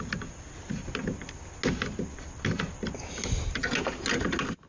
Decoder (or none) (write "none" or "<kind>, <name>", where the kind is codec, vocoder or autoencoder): none